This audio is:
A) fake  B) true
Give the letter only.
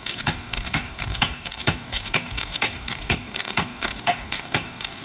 A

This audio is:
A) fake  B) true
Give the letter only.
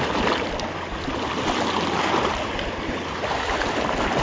B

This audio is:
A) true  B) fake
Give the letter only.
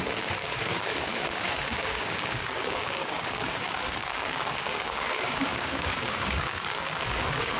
B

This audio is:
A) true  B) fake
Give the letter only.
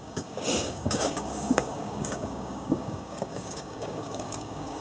B